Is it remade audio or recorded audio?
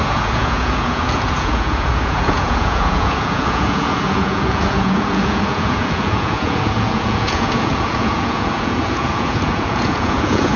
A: remade